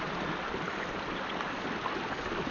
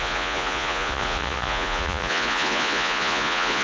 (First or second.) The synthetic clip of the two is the second